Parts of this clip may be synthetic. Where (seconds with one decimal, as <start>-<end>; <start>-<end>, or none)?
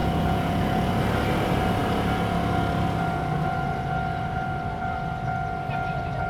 0.0-0.9